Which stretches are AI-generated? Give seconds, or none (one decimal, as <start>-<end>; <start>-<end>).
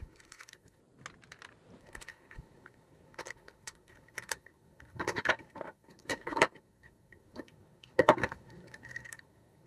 0.0-0.8; 1.8-9.7